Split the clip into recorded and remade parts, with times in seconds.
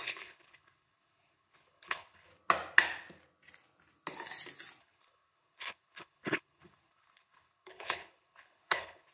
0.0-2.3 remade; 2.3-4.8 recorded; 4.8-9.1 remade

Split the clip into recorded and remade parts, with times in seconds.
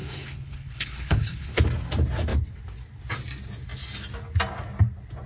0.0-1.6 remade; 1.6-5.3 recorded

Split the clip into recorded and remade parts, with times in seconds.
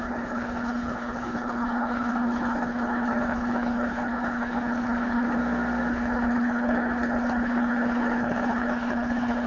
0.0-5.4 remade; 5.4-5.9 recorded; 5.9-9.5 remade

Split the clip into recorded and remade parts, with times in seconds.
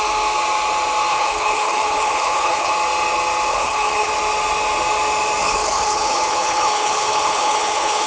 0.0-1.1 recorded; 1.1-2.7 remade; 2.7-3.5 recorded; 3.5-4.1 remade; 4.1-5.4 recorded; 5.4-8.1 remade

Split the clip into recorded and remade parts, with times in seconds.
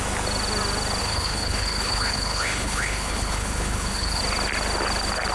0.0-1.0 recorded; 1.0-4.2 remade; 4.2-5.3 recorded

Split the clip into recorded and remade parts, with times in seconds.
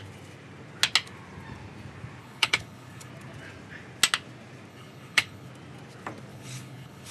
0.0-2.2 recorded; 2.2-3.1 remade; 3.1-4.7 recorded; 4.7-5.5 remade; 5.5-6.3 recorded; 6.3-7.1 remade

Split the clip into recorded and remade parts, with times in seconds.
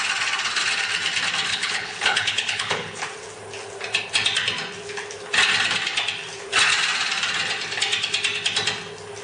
0.0-1.5 recorded; 1.5-3.0 remade; 3.0-9.2 recorded